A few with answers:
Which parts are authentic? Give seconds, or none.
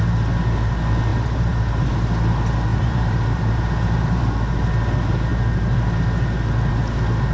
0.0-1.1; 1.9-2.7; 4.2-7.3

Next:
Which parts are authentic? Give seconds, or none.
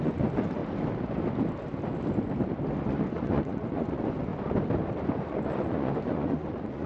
0.6-2.8; 4.3-5.2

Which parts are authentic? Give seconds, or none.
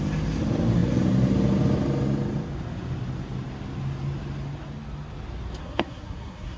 0.0-5.6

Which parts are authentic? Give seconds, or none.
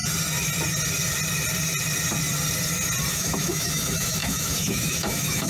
0.0-3.1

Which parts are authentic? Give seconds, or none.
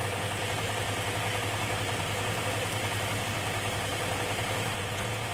3.2-3.9; 4.8-5.3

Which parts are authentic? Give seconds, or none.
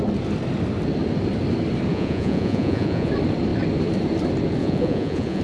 0.0-1.9; 3.1-4.6